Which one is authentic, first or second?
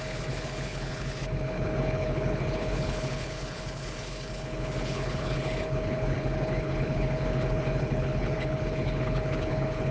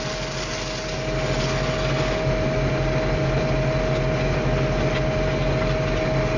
second